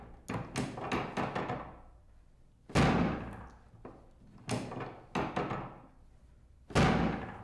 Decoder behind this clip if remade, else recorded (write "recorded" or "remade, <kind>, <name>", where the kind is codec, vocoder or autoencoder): recorded